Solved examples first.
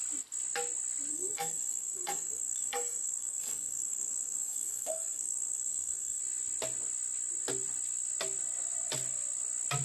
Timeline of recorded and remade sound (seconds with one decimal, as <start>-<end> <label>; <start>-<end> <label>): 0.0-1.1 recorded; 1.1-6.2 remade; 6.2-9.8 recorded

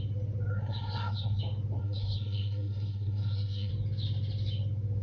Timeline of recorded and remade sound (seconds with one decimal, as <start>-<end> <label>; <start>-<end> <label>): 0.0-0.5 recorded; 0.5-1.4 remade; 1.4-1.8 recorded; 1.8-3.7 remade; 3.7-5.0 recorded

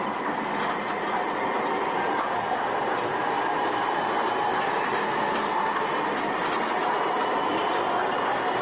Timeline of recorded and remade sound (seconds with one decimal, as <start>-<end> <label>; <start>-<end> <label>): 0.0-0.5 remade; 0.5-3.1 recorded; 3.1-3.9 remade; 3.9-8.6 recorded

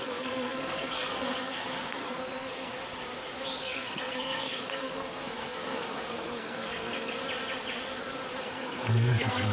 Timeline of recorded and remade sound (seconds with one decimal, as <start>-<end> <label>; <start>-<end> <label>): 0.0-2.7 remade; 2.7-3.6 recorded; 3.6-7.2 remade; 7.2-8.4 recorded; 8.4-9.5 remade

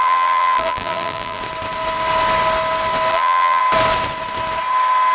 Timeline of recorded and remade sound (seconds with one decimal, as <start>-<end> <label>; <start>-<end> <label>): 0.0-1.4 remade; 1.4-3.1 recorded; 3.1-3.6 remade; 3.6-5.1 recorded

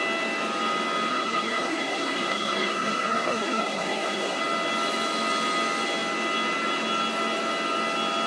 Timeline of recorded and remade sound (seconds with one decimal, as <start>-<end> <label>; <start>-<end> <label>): 0.0-1.1 recorded; 1.1-4.4 remade; 4.4-8.3 recorded

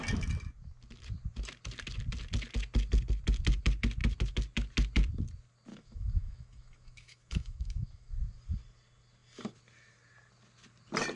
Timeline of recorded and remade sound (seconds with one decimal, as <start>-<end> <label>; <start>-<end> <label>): 0.0-5.7 recorded; 5.7-8.1 remade; 8.1-11.2 recorded

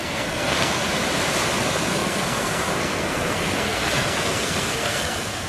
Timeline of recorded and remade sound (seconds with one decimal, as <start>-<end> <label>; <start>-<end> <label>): 0.0-0.8 remade; 0.8-1.6 recorded; 1.6-5.5 remade